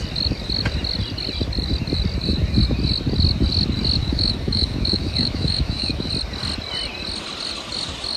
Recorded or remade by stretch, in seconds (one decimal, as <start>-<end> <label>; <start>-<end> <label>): 0.0-4.0 recorded; 4.0-6.1 remade; 6.1-8.2 recorded